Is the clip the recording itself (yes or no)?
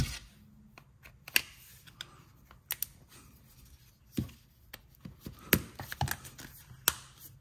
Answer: yes